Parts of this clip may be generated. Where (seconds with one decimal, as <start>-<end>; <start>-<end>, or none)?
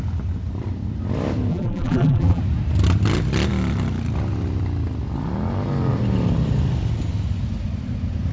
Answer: 1.5-2.4